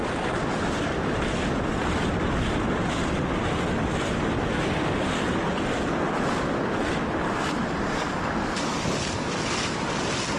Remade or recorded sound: recorded